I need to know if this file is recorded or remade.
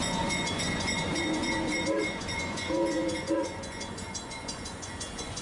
remade